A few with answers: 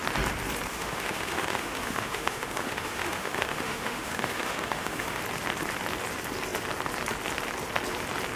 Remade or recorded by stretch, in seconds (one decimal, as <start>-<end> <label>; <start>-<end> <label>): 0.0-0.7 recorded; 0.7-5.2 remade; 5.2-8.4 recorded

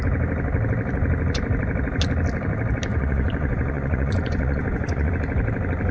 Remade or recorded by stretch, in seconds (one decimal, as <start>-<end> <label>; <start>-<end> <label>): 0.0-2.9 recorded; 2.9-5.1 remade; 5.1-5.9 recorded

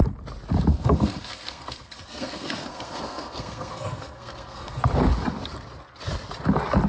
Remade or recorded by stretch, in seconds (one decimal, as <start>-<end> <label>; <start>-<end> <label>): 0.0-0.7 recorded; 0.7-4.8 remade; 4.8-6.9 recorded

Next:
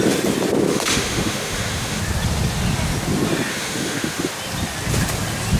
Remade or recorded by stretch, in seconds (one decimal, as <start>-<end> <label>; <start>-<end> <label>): 0.0-0.7 recorded; 0.7-2.0 remade; 2.0-3.5 recorded; 3.5-4.3 remade; 4.3-5.6 recorded

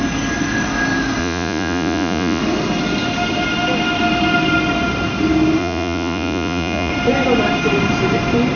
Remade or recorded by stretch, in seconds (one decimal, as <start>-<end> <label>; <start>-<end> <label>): 0.0-1.2 recorded; 1.2-2.4 remade; 2.4-5.6 recorded; 5.6-6.9 remade; 6.9-8.6 recorded

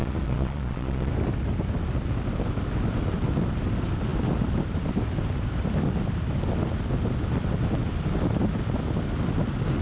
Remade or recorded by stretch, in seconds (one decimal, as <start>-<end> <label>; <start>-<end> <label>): 0.0-1.1 remade; 1.1-9.8 recorded

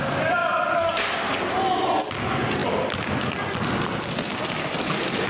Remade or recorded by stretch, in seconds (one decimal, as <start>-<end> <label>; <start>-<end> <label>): 0.0-5.3 recorded